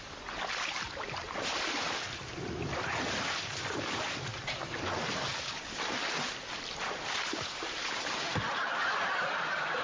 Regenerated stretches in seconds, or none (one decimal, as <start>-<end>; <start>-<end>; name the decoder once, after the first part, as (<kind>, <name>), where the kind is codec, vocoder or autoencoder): none